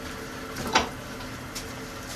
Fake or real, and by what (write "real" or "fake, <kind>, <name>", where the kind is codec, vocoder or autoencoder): real